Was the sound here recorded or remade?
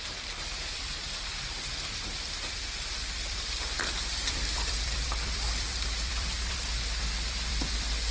remade